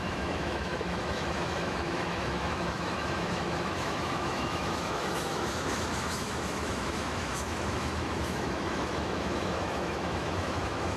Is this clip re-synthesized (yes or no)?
yes